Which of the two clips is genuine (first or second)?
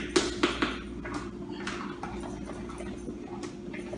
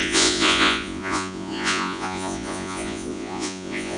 first